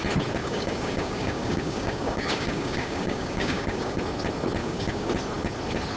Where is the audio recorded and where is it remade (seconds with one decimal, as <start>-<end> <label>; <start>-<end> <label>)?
0.0-0.4 recorded; 0.4-4.0 remade; 4.0-4.6 recorded; 4.6-5.1 remade; 5.1-6.0 recorded